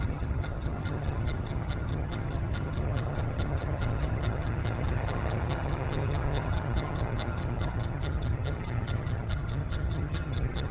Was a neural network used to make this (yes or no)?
yes